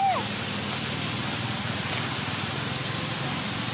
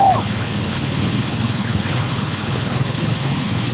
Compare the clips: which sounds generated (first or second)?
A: second